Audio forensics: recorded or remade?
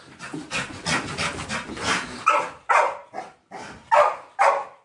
recorded